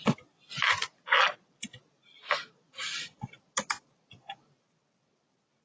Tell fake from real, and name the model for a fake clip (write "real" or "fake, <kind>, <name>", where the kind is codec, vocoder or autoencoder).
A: real